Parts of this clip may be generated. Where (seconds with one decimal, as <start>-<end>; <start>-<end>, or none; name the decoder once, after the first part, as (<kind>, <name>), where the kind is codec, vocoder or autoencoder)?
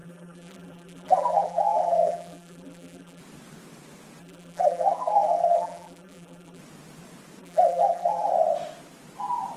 0.0-3.2 (vocoder, BigVGAN v2); 4.2-6.6; 7.4-8.3